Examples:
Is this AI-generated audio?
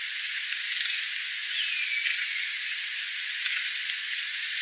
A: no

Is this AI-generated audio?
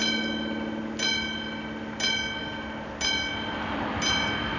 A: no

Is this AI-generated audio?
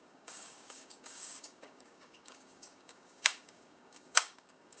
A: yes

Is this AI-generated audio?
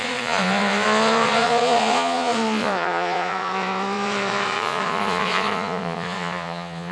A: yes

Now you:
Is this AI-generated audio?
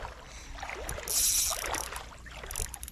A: no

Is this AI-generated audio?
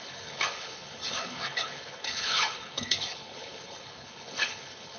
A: yes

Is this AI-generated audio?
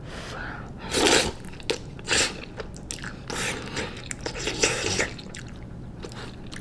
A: no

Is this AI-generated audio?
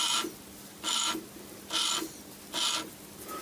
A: no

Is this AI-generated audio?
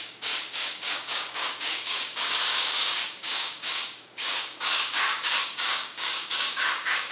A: yes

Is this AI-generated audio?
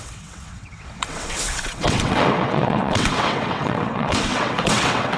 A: yes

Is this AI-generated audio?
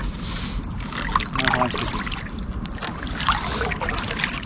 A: no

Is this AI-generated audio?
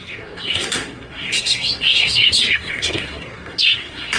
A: yes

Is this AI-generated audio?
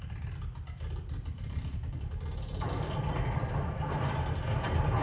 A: no